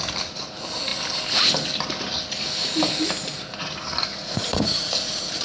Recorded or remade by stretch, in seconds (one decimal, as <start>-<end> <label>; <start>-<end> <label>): 0.0-4.1 recorded; 4.1-5.4 remade